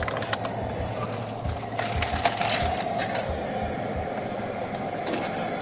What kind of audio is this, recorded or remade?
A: recorded